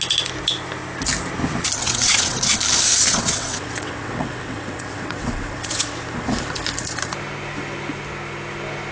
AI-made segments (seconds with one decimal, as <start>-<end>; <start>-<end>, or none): 1.8-2.4; 2.9-5.9